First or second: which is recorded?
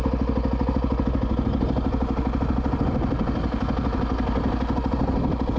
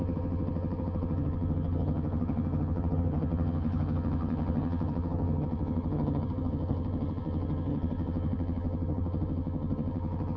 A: first